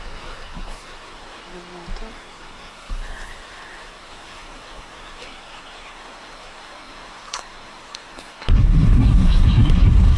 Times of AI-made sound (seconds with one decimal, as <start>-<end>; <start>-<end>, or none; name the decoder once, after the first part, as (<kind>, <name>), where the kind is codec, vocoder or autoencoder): 0.0-1.4 (codec, SNAC); 2.1-10.2